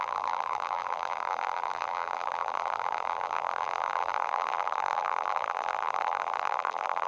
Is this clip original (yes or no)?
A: no